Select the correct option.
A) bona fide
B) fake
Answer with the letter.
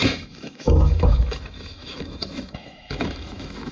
B